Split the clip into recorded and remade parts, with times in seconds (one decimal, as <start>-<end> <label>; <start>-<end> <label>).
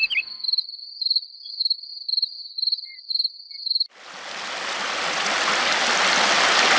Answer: 0.0-6.8 recorded